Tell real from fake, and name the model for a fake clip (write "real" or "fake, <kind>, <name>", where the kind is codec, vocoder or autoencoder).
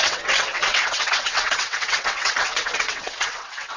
fake, vocoder, WaveNeXt